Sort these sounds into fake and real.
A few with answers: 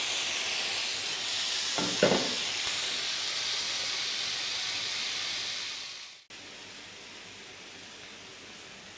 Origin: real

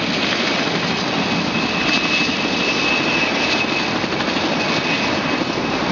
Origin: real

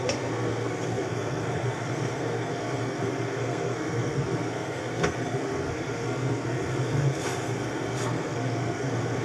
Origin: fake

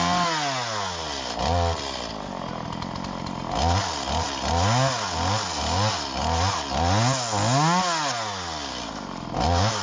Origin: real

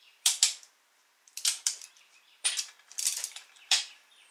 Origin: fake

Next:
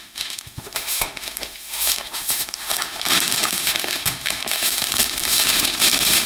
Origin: fake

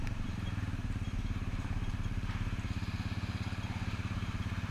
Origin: fake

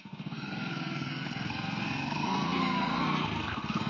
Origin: fake